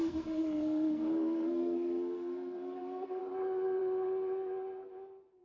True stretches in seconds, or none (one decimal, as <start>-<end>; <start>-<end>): 3.2-5.4